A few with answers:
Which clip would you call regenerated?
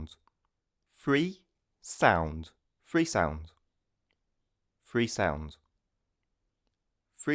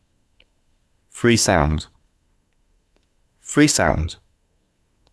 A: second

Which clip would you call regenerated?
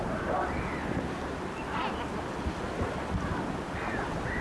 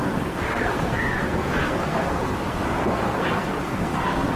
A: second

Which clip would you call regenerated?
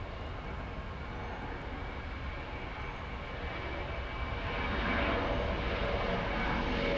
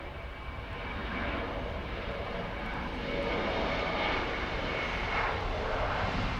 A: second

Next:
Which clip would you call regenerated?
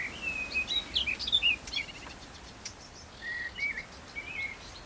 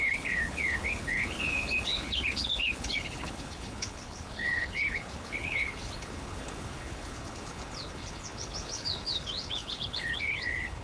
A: second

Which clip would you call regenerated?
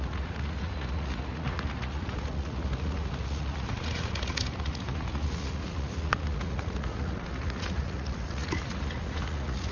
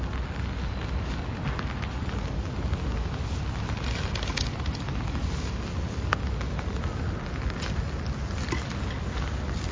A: first